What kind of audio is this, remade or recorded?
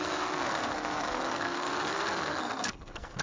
remade